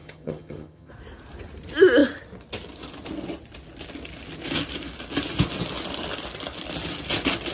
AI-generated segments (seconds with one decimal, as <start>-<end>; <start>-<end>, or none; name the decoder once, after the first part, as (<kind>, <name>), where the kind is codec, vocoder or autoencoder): 0.0-0.9 (vocoder, HiFi-GAN)